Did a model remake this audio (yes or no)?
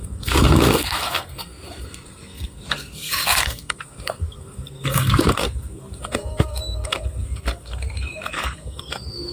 yes